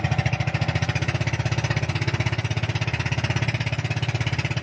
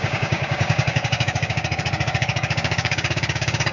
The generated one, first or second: second